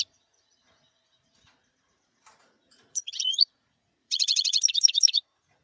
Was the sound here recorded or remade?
remade